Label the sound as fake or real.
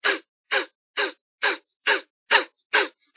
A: real